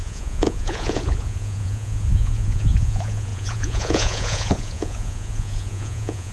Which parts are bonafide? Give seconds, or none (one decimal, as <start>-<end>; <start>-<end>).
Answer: none

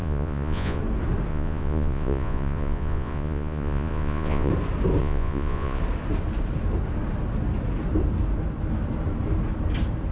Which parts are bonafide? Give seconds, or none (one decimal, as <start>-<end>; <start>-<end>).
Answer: 0.8-1.3; 4.5-5.0; 5.8-10.1

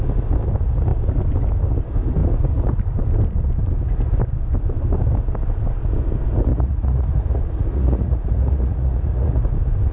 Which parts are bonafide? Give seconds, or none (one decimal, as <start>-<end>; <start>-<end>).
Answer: 0.0-6.5; 9.4-9.9

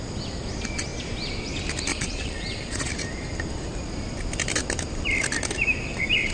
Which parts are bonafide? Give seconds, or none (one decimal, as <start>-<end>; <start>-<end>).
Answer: 0.0-1.9; 2.9-6.3